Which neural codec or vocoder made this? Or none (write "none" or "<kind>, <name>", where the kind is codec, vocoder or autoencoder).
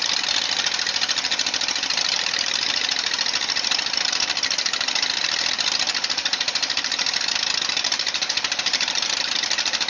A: vocoder, BigVGAN v2